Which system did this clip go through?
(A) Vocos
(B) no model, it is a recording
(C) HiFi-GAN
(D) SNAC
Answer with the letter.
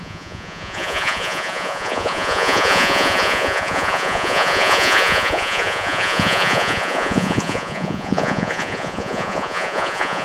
A